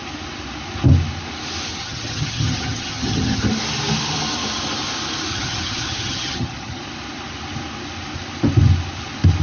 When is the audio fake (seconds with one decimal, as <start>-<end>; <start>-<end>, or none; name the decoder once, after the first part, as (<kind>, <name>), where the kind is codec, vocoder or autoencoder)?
1.7-3.5 (vocoder, HiFi-GAN); 5.3-6.8